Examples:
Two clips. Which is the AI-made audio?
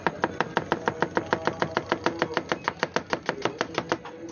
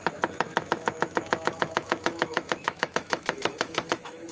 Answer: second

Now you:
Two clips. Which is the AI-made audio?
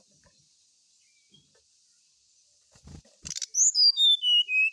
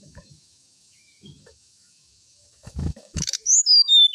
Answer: second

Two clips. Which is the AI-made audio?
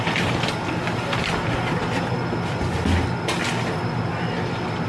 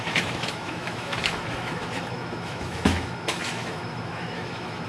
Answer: second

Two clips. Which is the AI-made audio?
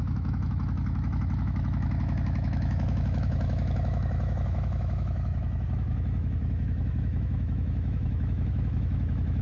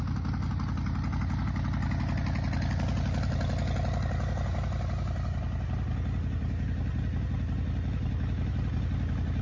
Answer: first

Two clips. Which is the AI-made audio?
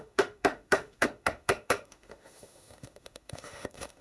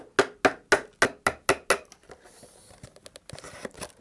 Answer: first